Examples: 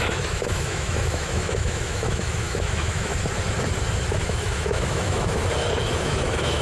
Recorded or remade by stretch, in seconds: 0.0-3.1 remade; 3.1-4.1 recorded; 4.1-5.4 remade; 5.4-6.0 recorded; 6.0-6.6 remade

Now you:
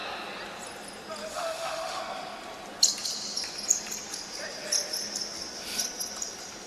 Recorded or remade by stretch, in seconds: 0.0-1.3 recorded; 1.3-2.0 remade; 2.0-6.7 recorded

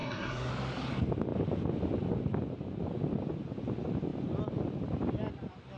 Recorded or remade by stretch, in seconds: 0.0-0.5 remade; 0.5-5.8 recorded

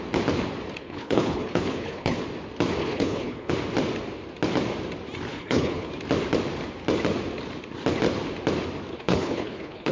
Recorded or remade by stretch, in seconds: 0.0-0.8 recorded; 0.8-2.2 remade; 2.2-2.8 recorded; 2.8-3.5 remade; 3.5-5.3 recorded; 5.3-5.9 remade; 5.9-8.9 recorded; 8.9-9.9 remade